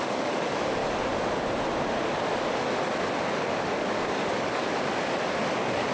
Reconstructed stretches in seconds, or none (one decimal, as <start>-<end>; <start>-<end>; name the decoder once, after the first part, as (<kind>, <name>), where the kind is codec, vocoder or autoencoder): 0.0-0.8 (codec, DAC); 3.6-4.6; 5.5-5.9